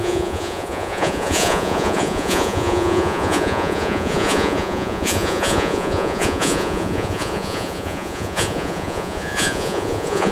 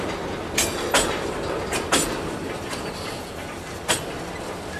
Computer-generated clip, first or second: first